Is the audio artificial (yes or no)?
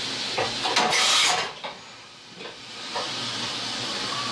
no